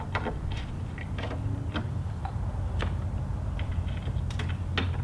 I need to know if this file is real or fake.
real